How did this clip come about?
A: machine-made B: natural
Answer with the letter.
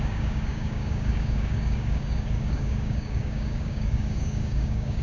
A